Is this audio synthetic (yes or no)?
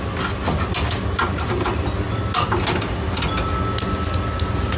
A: no